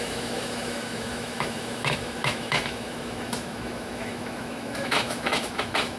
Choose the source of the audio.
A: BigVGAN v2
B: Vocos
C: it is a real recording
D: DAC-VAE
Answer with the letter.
D